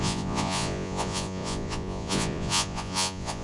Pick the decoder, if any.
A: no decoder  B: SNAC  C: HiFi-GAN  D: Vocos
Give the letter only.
D